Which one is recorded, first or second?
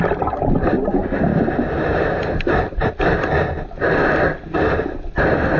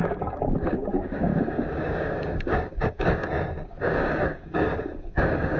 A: first